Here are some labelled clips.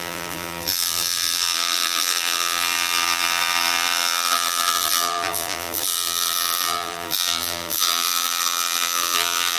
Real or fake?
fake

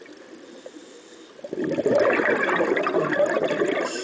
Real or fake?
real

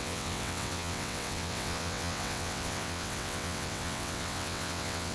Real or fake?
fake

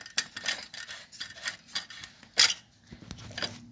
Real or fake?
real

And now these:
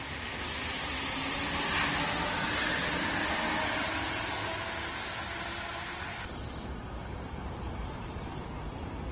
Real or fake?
real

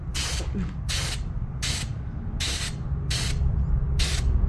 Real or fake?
real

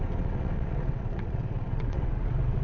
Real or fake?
fake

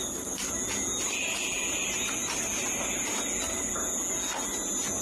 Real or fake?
real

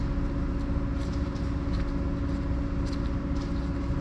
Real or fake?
real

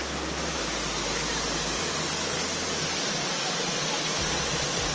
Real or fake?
real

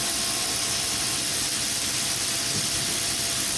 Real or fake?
real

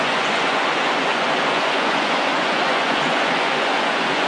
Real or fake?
fake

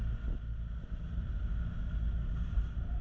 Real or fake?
real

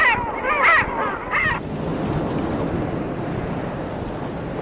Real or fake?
real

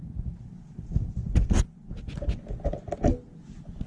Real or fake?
real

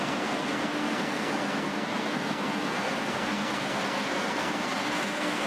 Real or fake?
fake